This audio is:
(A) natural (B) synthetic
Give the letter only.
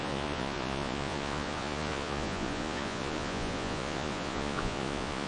B